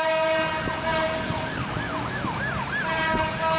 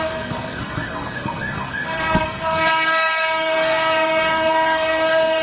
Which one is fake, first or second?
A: second